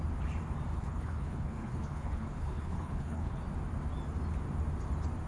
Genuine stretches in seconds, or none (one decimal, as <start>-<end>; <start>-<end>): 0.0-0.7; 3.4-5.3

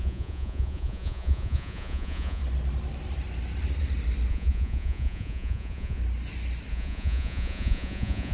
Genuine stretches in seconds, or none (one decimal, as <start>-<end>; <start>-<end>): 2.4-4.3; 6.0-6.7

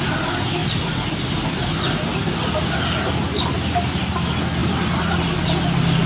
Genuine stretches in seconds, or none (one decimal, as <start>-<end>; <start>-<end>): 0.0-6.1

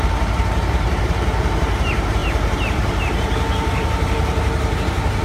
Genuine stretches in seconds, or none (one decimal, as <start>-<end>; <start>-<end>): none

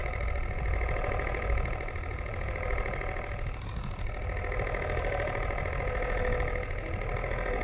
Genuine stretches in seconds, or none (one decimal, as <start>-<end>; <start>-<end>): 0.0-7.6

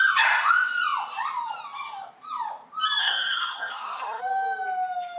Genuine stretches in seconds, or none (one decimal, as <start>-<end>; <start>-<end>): 0.0-3.0; 4.2-5.2